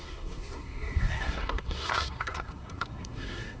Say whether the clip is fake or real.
fake